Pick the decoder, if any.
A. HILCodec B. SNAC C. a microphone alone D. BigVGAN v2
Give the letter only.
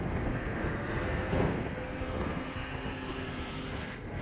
B